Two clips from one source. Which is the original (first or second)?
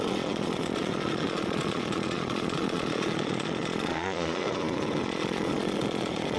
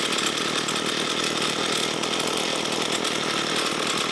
second